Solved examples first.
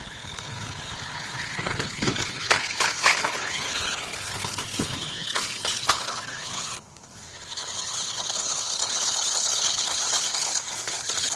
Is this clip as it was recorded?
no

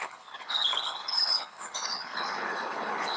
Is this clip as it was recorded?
no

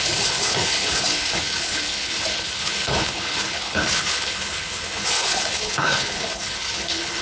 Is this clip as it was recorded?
no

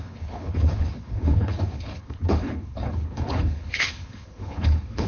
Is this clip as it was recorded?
no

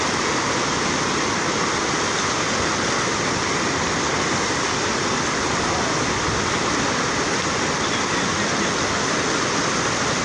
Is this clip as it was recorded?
yes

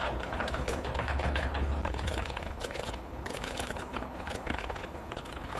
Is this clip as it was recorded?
no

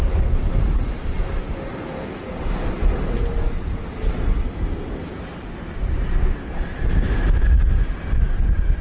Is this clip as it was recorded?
yes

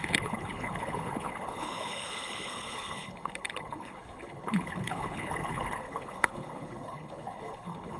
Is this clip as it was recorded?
no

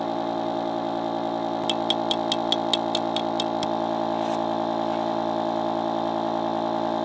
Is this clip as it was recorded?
yes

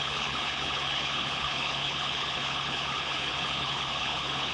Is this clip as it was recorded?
no